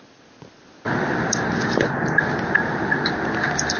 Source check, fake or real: real